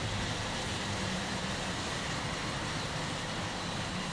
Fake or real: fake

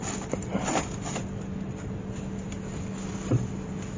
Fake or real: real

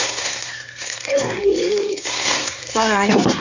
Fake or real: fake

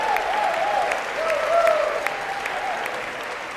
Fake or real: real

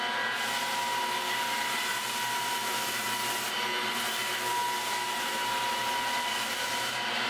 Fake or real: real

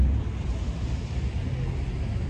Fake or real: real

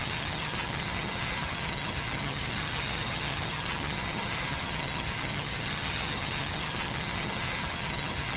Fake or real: fake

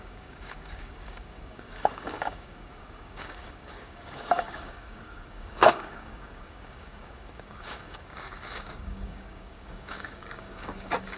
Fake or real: fake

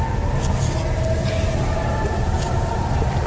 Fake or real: real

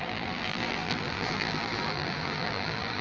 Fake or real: fake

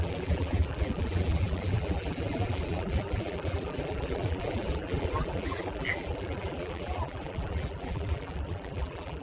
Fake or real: fake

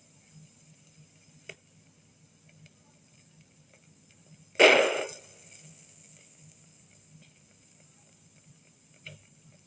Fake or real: real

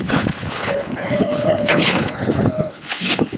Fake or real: fake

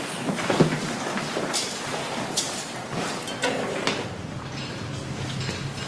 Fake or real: real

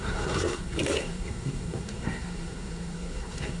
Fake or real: fake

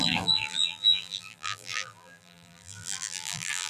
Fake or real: fake